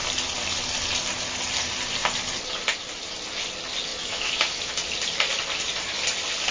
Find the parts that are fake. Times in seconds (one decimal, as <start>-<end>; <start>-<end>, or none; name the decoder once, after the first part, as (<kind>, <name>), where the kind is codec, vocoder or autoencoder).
3.9-4.7 (autoencoder, DAC-VAE)